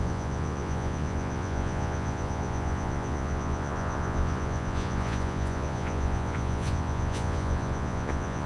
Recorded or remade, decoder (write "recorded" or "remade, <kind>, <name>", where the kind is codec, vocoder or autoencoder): remade, vocoder, Vocos